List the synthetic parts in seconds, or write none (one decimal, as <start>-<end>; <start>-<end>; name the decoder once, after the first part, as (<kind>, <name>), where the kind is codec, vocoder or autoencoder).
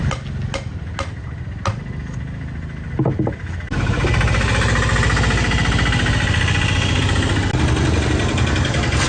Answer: none